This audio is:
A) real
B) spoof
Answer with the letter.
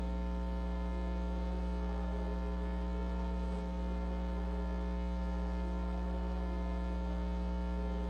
B